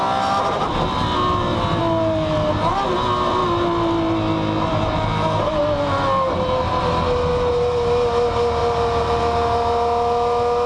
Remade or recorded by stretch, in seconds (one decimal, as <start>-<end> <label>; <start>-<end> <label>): 0.0-8.6 recorded; 8.6-9.2 remade; 9.2-10.7 recorded